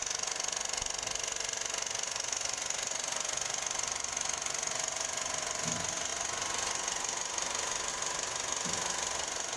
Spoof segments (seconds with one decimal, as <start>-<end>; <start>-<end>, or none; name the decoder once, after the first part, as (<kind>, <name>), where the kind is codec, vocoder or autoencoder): none

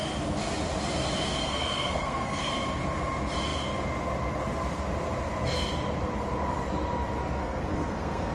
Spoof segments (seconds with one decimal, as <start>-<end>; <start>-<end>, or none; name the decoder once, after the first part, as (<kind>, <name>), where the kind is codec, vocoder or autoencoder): 1.4-2.5 (codec, SNAC); 7.4-8.3

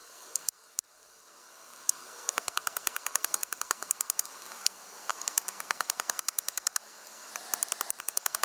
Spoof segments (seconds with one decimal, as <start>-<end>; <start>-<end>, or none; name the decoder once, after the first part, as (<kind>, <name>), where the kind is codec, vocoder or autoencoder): 0.0-7.3 (codec, SNAC); 8.0-8.4

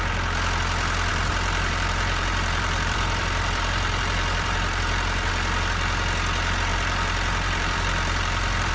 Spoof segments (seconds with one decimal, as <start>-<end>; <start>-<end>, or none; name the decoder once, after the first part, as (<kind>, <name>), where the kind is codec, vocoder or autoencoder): 1.1-5.3 (vocoder, BigVGAN v2); 6.7-8.7

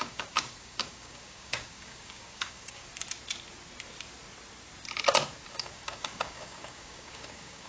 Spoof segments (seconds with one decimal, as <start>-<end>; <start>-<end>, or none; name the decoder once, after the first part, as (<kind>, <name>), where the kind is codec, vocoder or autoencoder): 0.0-2.9 (codec, DAC); 5.5-7.7

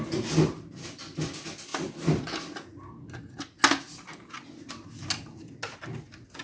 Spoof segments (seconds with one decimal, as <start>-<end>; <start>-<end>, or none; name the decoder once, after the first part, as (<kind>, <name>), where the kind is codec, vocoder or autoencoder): none

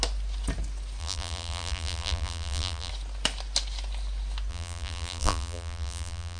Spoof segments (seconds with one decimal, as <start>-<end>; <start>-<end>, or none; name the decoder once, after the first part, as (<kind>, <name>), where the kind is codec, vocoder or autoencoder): 1.0-2.9 (vocoder, BigVGAN v2); 4.5-6.4